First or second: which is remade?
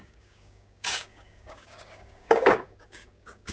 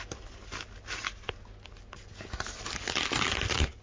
first